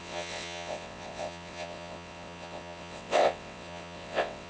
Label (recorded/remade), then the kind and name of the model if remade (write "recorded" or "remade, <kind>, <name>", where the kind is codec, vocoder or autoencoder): remade, vocoder, WaveNeXt